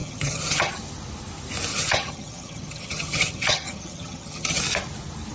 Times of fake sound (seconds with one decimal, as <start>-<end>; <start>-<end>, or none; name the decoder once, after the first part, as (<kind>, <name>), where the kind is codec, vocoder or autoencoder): 0.0-0.7 (vocoder, HiFi-GAN); 1.7-4.6